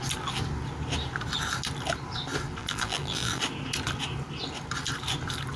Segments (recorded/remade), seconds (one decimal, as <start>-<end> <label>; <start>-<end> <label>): 0.0-2.6 recorded; 2.6-3.4 remade; 3.4-5.6 recorded